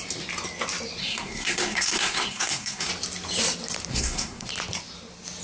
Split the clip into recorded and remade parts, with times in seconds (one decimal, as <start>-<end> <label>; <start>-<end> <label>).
0.0-1.0 recorded; 1.0-2.9 remade; 2.9-3.9 recorded; 3.9-4.5 remade; 4.5-5.4 recorded